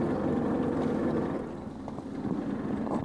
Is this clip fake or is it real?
real